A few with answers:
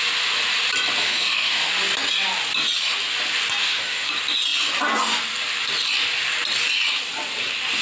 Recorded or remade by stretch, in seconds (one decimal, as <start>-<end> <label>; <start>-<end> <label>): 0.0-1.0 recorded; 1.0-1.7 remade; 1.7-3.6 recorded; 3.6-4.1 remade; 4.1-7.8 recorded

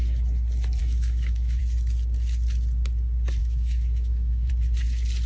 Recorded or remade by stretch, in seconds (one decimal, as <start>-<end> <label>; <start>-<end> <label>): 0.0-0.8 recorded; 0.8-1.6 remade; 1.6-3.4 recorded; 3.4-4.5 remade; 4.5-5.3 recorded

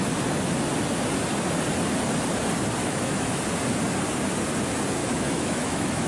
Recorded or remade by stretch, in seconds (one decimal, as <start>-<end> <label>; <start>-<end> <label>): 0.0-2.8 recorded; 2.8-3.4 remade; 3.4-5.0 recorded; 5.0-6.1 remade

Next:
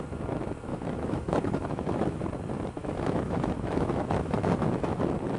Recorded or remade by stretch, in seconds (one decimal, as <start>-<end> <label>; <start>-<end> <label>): 0.0-0.7 recorded; 0.7-2.2 remade; 2.2-2.8 recorded; 2.8-5.0 remade; 5.0-5.4 recorded

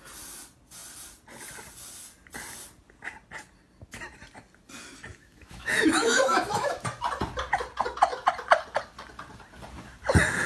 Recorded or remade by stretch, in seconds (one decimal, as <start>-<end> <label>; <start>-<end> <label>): 0.0-5.1 recorded; 5.1-6.8 remade; 6.8-10.5 recorded

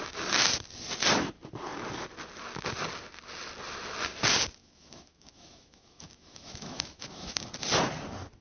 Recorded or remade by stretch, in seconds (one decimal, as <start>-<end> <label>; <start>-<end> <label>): 0.0-4.6 recorded; 4.6-7.4 remade; 7.4-8.4 recorded